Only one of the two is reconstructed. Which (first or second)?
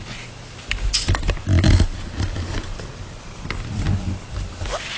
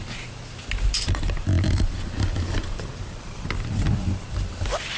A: second